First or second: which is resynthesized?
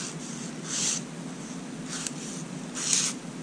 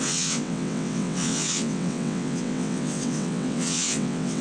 second